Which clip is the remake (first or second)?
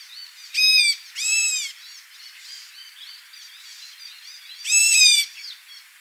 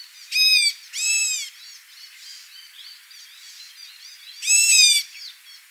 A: first